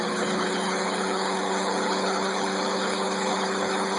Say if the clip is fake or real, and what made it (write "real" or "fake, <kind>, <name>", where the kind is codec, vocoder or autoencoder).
fake, codec, HILCodec